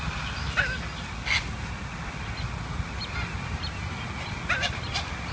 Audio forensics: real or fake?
real